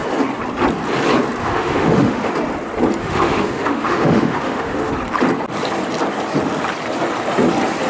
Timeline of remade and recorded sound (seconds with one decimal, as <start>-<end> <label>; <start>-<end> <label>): 0.0-1.4 recorded; 1.4-2.3 remade; 2.3-3.0 recorded; 3.0-4.9 remade; 4.9-7.9 recorded